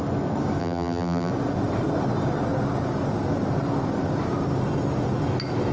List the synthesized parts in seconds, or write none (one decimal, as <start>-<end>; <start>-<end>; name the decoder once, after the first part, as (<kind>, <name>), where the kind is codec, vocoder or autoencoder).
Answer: 0.6-1.3 (vocoder, BigVGAN v2)